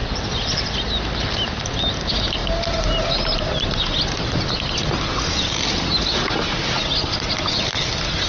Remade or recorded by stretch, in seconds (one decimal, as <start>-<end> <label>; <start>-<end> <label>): 0.0-8.3 recorded